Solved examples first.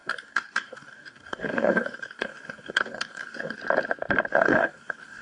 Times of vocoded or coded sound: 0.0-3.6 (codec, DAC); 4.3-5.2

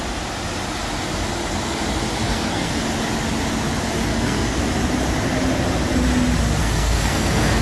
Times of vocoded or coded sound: 2.2-2.7 (codec, SNAC); 4.1-4.6; 6.6-7.6